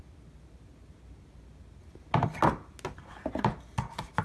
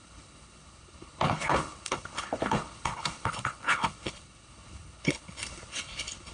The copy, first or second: second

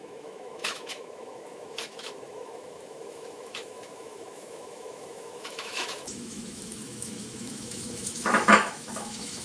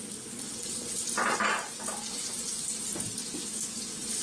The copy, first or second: first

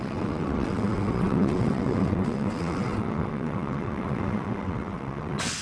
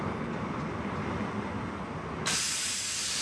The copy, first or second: first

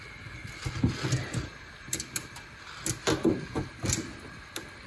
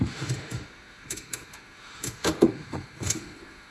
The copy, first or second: second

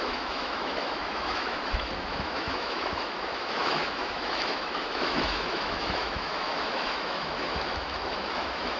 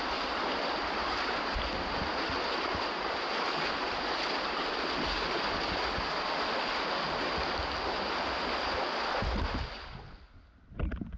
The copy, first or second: first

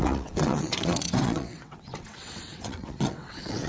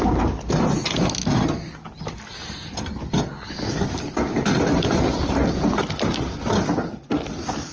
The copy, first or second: first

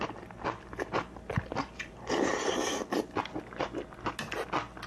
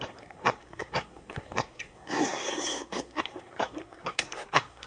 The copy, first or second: second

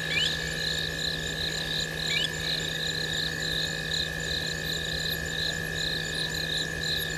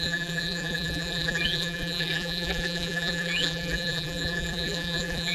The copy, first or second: second